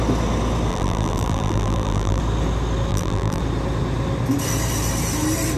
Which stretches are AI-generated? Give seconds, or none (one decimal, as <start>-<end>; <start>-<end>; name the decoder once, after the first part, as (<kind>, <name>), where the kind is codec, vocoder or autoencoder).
0.7-2.2 (vocoder, BigVGAN v2); 2.9-3.4